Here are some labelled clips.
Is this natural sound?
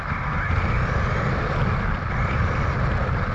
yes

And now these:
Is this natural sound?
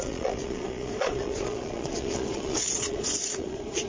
no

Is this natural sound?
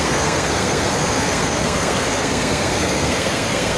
no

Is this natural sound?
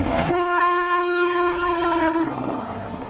no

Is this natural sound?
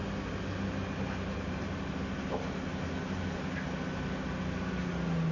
yes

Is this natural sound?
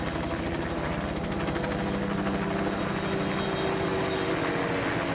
yes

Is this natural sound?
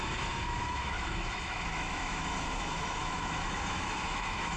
no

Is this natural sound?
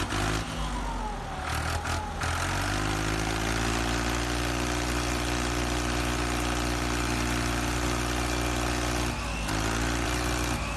yes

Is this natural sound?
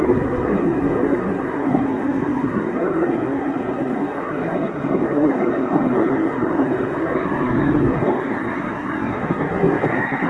no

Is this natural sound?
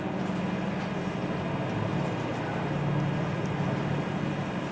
yes